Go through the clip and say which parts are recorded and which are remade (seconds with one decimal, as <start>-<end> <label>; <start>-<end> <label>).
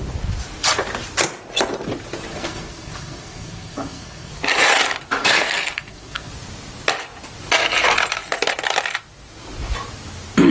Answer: 0.0-2.3 recorded; 2.3-4.3 remade; 4.3-5.2 recorded; 5.2-6.3 remade; 6.3-10.5 recorded